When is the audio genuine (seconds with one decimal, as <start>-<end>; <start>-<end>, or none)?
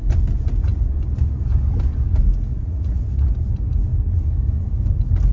0.0-2.5; 3.3-5.3